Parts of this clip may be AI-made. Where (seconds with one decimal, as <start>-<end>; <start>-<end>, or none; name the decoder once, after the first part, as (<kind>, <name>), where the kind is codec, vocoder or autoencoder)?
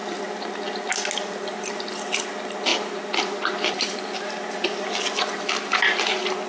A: none